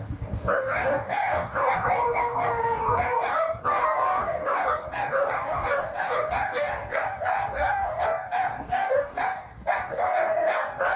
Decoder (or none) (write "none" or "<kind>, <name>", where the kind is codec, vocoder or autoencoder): codec, DAC